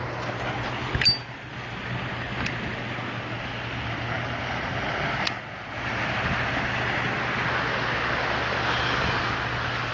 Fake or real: real